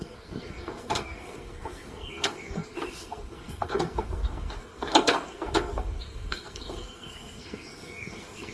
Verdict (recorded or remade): remade